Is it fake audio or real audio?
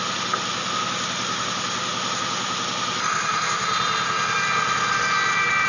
real